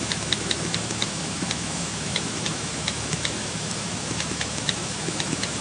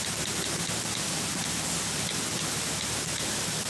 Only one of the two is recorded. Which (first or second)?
second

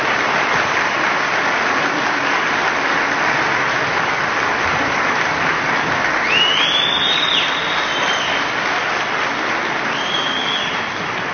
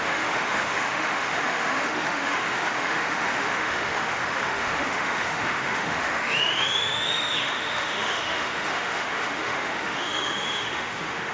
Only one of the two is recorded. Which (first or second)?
first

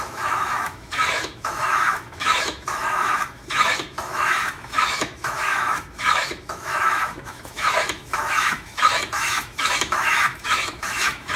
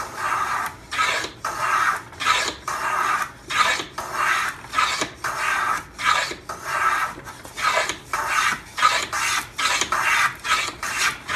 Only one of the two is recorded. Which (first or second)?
second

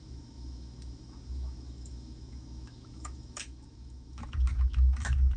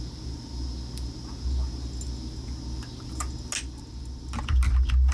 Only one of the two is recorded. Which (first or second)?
second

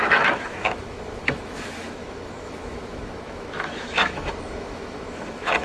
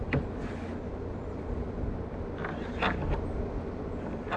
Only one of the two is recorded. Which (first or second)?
second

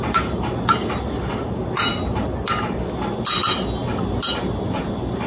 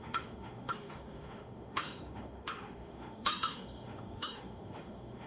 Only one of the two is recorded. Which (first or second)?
first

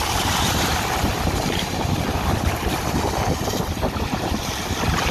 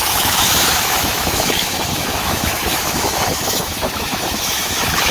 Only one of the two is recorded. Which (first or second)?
first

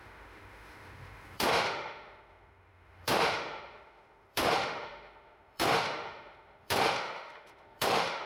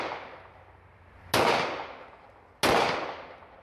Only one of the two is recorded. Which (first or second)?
second